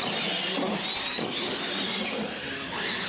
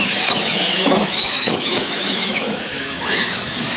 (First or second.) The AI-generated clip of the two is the second